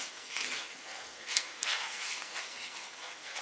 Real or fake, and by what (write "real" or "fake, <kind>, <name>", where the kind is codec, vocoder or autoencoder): fake, codec, SNAC